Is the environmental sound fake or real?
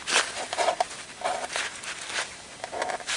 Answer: real